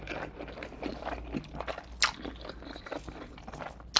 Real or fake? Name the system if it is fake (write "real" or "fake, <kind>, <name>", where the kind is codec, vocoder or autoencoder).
real